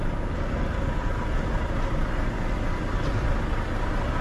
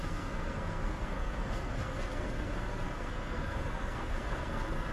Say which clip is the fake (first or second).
second